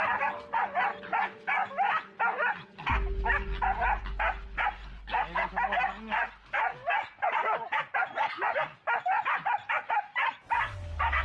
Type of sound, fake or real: real